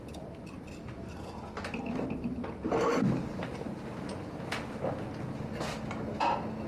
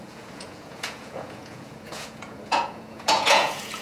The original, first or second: first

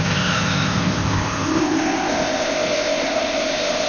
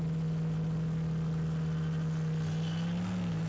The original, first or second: second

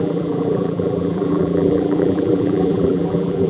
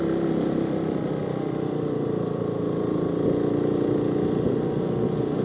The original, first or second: second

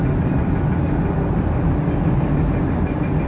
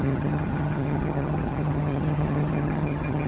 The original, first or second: first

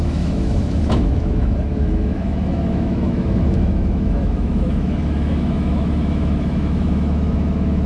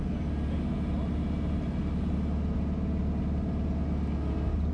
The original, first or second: second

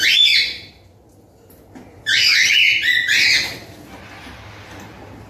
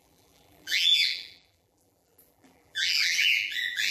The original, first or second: first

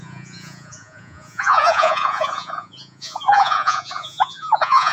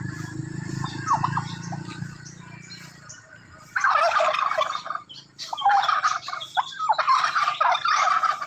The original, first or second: second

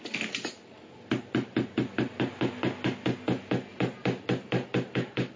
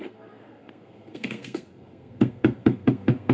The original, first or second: first